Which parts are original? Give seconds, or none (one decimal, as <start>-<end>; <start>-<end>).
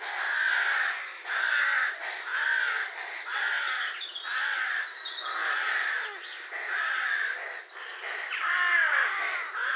2.3-7.0